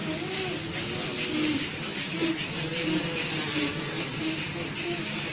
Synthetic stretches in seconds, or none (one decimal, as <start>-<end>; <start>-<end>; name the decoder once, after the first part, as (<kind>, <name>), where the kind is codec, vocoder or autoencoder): none